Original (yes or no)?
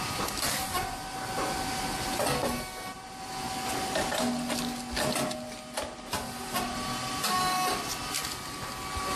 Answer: yes